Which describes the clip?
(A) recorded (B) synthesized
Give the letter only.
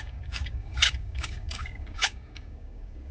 B